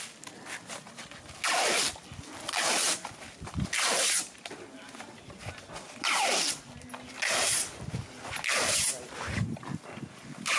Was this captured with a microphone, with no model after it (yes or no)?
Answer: yes